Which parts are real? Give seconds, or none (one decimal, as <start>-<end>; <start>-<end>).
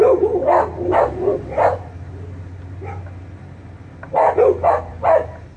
0.0-5.6